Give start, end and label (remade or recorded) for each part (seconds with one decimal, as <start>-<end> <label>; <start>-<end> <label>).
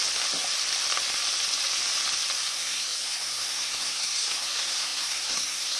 0.0-2.5 recorded; 2.5-5.8 remade